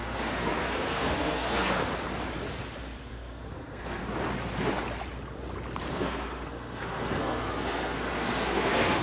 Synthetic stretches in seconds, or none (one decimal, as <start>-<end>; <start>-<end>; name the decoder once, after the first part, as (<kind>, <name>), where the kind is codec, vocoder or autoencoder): 0.0-1.8 (codec, SNAC); 3.1-4.0; 5.9-9.0